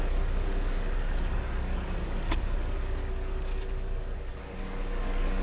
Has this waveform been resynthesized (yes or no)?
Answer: yes